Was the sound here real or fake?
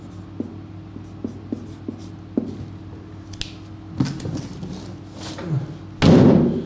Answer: real